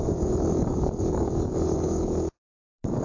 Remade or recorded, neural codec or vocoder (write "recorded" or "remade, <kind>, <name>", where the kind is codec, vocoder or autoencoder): remade, codec, DAC